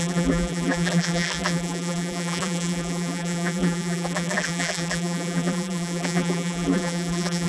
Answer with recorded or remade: remade